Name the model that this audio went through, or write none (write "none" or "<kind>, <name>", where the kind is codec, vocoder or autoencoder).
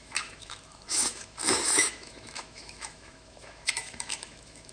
autoencoder, DAC-VAE